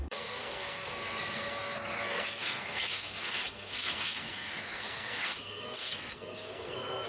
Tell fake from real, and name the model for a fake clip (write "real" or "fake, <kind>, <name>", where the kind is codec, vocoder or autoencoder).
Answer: fake, codec, SNAC